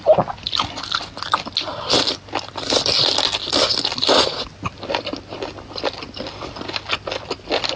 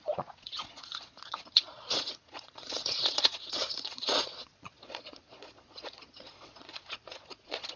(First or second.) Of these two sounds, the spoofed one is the second